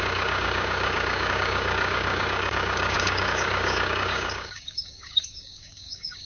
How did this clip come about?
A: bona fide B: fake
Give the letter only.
B